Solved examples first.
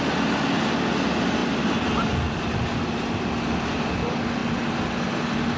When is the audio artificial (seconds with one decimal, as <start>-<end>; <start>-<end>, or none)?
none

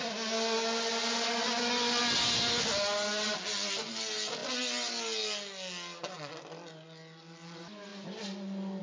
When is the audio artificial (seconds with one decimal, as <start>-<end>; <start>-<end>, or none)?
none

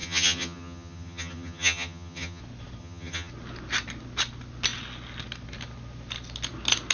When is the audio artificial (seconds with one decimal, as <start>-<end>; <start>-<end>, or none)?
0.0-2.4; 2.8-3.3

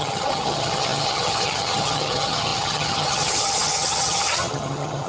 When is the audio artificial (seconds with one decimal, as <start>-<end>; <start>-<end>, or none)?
0.0-5.1

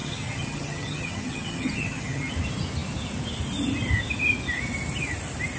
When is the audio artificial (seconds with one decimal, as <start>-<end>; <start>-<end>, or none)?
0.0-2.3

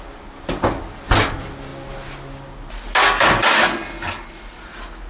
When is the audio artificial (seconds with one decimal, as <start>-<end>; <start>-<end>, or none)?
none